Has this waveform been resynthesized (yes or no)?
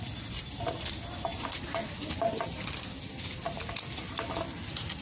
no